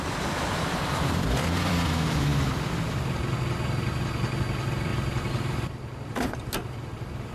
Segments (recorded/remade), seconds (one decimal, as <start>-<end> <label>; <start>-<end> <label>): 0.0-2.3 remade; 2.3-4.4 recorded; 4.4-4.9 remade; 4.9-5.4 recorded; 5.4-7.3 remade